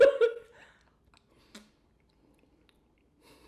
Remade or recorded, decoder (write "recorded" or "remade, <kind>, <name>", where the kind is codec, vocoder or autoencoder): recorded